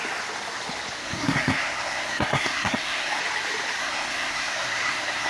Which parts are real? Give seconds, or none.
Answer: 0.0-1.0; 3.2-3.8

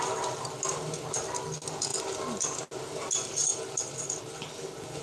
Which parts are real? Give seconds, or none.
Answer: 0.0-5.0

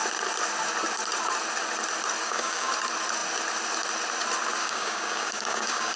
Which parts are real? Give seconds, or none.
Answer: 0.0-2.2; 2.7-4.6

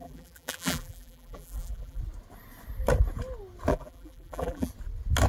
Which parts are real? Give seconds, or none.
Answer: 2.0-3.7; 4.7-5.3